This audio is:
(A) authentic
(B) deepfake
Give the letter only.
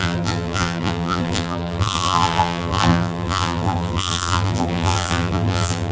B